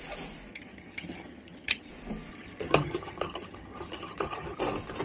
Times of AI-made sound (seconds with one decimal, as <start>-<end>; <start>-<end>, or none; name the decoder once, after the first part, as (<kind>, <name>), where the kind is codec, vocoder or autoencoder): 0.5-1.9 (vocoder, HiFi-GAN); 2.3-4.6